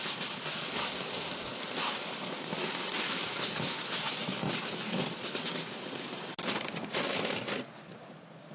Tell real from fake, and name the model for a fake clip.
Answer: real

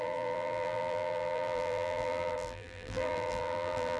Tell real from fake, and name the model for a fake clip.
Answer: fake, vocoder, BigVGAN v2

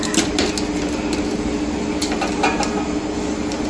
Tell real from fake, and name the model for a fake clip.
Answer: real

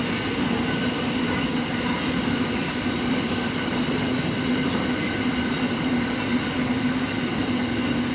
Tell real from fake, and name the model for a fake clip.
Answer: real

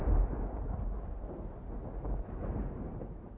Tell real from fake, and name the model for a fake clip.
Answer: real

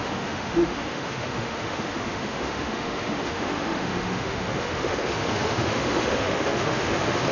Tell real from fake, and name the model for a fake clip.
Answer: fake, autoencoder, DAC-VAE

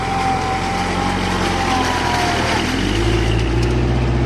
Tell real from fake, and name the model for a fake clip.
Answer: real